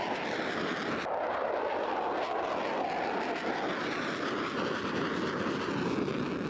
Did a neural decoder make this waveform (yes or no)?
no